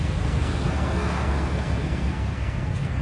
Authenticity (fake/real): fake